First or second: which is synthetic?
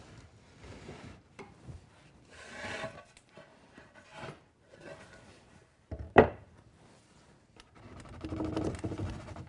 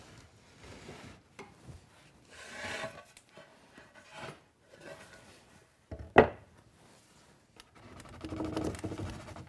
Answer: first